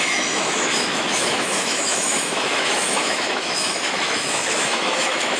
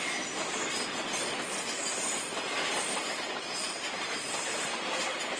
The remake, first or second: first